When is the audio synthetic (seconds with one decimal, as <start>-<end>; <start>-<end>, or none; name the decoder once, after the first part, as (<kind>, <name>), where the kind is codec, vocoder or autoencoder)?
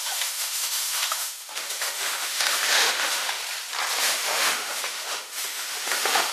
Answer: 0.0-3.4 (autoencoder, DAC-VAE); 4.0-6.3